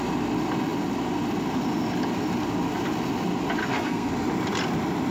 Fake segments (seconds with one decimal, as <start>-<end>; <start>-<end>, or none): 3.6-4.1